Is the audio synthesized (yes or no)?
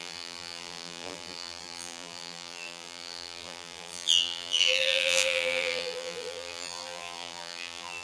yes